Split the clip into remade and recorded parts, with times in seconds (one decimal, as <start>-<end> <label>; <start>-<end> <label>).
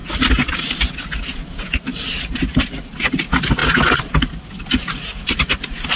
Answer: 0.0-6.0 recorded